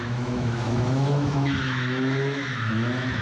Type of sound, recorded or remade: remade